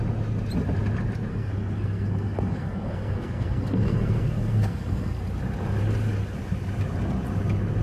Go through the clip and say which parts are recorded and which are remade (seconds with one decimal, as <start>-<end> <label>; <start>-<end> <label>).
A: 0.0-1.3 recorded; 1.3-5.2 remade; 5.2-7.8 recorded